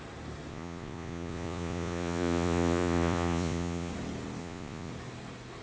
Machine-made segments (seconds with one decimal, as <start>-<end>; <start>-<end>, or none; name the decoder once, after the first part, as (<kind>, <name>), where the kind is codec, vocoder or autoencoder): 0.5-3.9 (vocoder, Vocos); 4.4-4.9

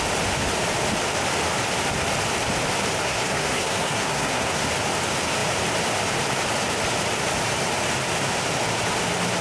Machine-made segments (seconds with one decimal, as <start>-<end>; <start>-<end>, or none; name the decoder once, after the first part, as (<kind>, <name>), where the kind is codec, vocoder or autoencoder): 3.0-4.7 (codec, SNAC)